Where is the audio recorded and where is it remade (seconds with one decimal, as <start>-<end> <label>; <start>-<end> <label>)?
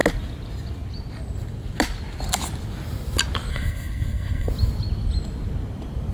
0.0-3.5 recorded; 3.5-4.5 remade; 4.5-6.1 recorded